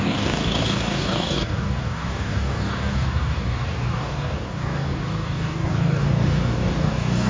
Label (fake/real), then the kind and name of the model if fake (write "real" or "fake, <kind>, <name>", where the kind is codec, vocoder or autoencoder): fake, codec, DAC